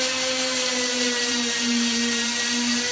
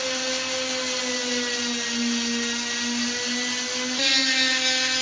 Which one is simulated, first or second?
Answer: first